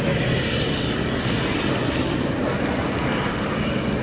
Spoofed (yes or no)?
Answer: no